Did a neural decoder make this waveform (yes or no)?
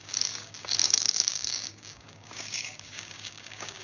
yes